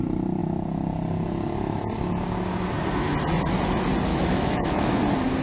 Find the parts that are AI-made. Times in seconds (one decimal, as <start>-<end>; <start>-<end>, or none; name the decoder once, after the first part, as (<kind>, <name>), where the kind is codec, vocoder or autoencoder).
4.1-5.0 (autoencoder, DAC-VAE)